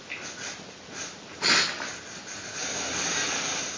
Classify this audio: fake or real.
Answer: real